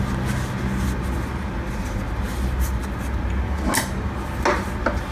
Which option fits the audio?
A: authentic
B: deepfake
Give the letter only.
A